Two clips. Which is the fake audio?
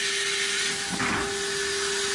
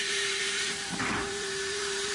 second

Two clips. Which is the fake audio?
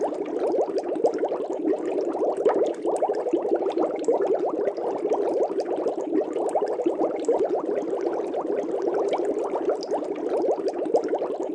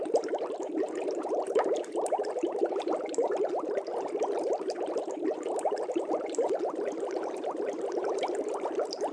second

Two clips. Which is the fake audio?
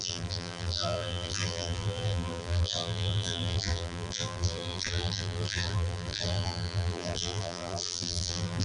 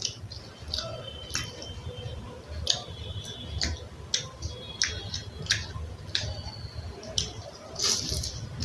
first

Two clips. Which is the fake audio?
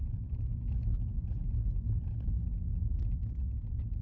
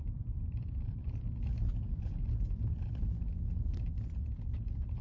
second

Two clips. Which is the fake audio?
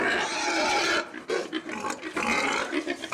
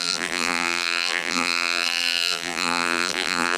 second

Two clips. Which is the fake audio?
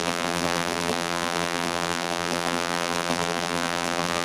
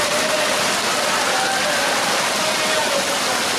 first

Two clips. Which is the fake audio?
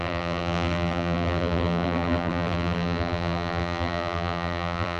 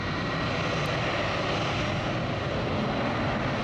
first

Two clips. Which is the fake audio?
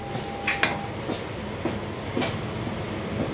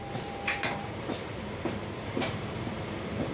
second